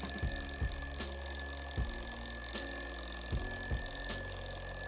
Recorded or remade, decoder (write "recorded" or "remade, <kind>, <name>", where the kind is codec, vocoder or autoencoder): recorded